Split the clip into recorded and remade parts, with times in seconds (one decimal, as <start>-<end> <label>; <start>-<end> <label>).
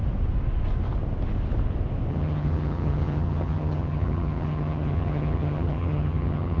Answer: 0.0-2.1 recorded; 2.1-6.6 remade